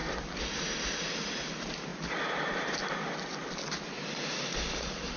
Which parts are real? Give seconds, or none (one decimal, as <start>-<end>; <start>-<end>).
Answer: 0.0-5.2